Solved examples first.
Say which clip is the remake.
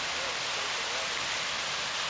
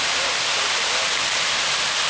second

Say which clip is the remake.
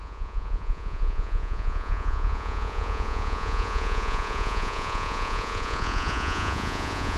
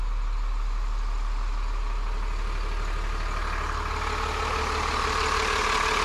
first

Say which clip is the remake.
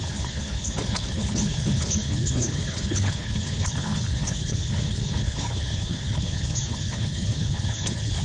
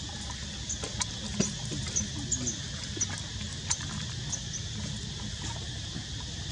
first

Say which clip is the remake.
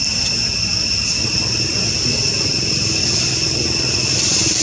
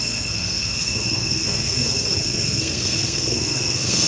second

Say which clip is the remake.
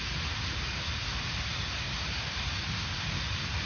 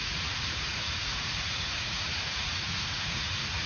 second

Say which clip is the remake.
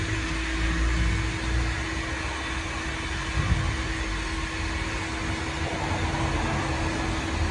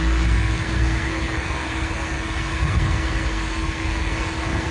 second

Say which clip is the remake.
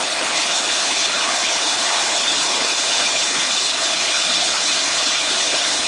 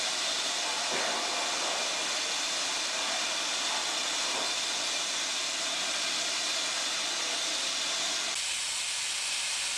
first